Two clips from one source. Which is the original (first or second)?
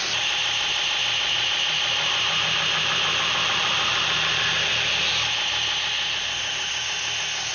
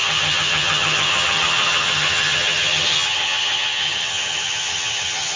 first